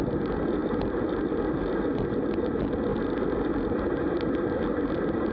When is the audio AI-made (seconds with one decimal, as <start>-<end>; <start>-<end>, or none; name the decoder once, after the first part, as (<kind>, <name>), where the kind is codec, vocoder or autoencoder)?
2.9-5.3 (vocoder, BigVGAN v2)